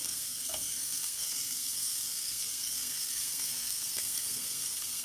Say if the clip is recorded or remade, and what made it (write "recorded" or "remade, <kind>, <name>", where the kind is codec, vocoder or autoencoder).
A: remade, codec, SNAC